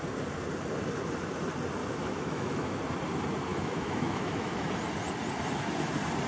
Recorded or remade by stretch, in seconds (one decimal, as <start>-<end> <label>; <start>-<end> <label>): 0.0-1.8 recorded; 1.8-2.8 remade; 2.8-3.5 recorded; 3.5-4.7 remade; 4.7-6.3 recorded